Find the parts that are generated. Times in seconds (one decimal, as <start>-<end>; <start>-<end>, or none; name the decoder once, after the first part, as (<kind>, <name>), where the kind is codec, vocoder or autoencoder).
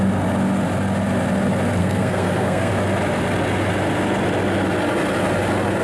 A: 1.8-2.7 (codec, SNAC)